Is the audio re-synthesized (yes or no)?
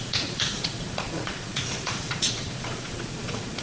yes